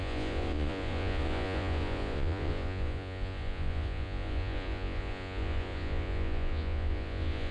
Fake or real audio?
fake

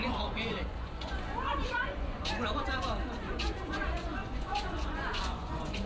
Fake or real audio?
fake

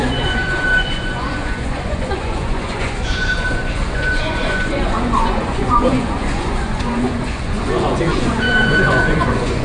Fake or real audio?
fake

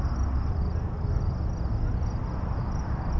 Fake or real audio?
real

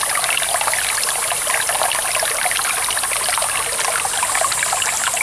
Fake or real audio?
real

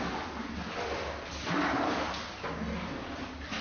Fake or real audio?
real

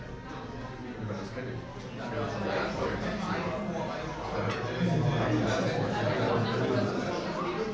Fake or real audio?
real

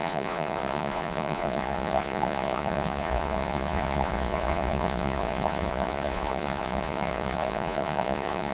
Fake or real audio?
fake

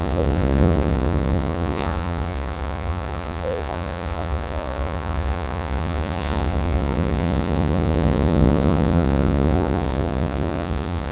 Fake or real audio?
fake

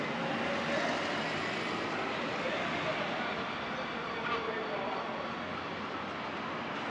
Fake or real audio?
real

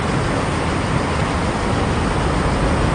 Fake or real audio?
real